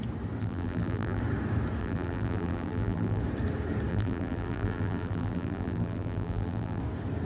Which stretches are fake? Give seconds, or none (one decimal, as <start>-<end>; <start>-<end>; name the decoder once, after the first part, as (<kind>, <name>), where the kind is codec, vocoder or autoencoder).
0.4-1.2 (vocoder, BigVGAN v2); 1.8-3.2; 3.9-6.8